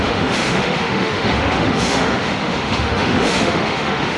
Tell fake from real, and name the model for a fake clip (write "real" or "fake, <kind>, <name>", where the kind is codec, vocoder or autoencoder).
fake, autoencoder, DAC-VAE